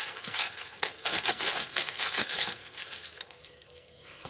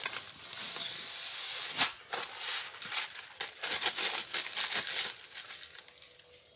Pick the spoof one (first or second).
first